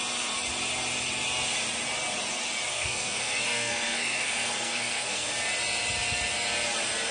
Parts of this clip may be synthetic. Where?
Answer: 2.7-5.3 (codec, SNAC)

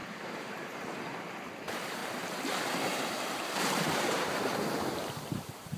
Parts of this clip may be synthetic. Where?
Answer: 0.0-1.0 (vocoder, BigVGAN v2); 2.0-5.8

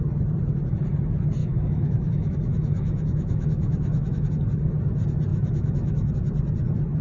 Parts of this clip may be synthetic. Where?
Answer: 1.4-4.3 (autoencoder, DAC-VAE); 5.3-6.1

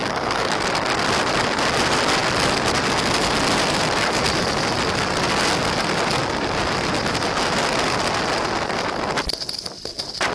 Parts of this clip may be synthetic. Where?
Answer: 0.0-0.7 (codec, DAC)